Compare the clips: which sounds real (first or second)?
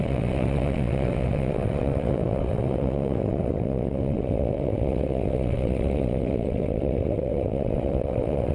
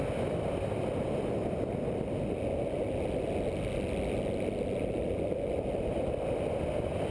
second